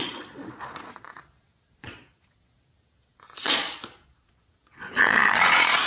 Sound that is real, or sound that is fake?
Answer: fake